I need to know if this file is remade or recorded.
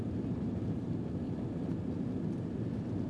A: recorded